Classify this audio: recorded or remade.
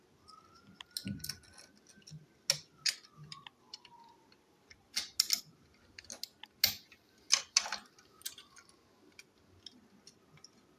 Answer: recorded